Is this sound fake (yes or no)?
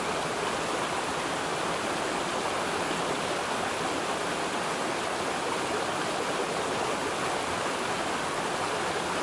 no